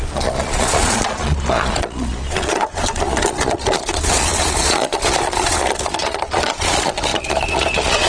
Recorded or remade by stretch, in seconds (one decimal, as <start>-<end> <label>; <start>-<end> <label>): 0.0-8.1 remade